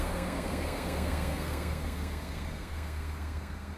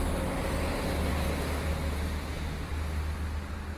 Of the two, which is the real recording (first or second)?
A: second